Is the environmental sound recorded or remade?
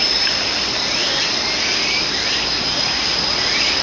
recorded